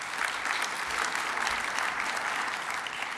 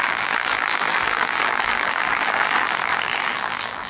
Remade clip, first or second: second